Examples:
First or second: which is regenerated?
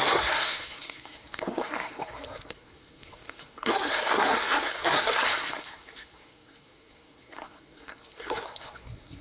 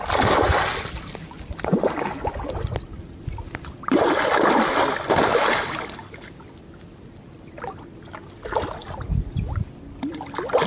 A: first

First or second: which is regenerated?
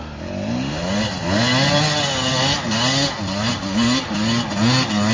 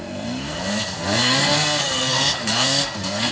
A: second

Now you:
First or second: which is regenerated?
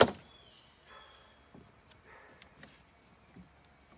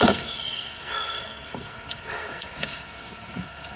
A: second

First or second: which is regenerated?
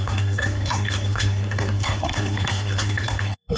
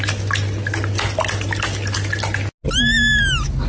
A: first